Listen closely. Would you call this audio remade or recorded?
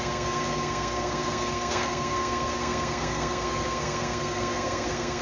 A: remade